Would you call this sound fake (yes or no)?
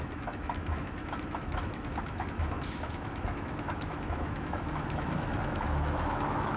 yes